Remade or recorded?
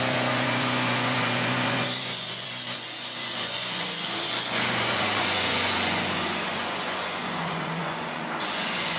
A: remade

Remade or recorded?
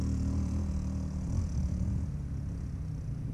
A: recorded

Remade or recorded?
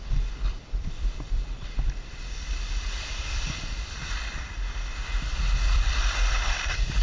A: remade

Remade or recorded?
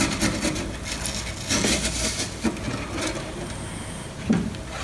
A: recorded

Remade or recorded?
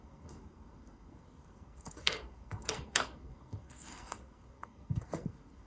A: remade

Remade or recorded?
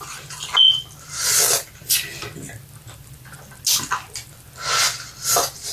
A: recorded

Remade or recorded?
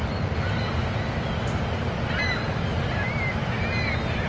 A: recorded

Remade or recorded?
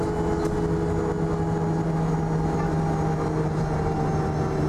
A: recorded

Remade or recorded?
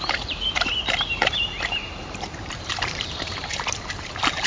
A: remade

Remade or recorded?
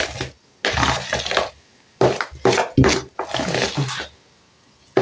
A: recorded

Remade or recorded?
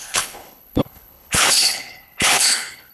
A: remade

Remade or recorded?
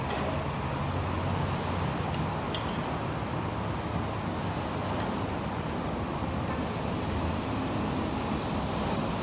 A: recorded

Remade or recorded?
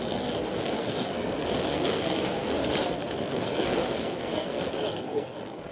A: remade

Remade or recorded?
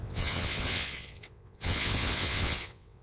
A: remade